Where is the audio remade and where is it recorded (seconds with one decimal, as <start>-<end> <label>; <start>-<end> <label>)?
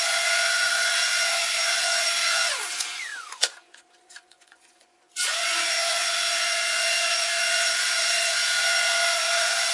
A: 0.0-9.7 remade